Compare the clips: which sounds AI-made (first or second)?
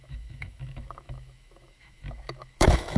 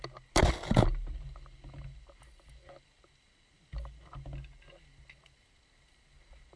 first